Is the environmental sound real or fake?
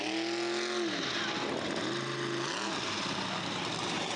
real